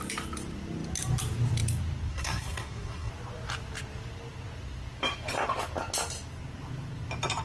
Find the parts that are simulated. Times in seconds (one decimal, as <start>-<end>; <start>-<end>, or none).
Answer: 2.1-3.1

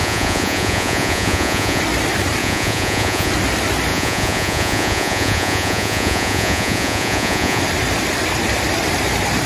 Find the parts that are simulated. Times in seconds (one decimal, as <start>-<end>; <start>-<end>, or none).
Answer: 0.0-1.8; 2.4-3.3; 3.9-7.6

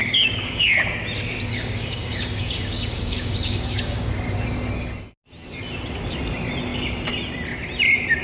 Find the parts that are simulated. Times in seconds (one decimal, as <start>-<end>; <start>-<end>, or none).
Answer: 0.0-0.8; 1.5-4.1

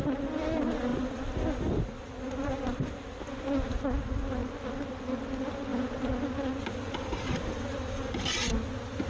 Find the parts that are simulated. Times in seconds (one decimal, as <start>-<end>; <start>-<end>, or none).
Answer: none

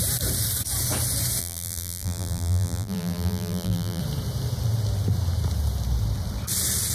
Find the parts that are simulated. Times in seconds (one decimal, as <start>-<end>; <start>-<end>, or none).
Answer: 1.4-4.0